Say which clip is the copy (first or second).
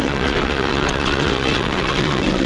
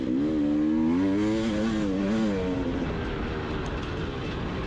first